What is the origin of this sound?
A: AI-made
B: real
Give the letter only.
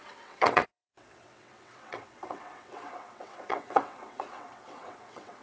A